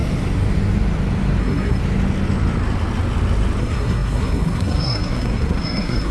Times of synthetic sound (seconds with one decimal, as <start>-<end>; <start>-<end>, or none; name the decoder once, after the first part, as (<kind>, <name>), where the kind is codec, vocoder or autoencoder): 1.4-1.8 (codec, SNAC); 3.6-6.1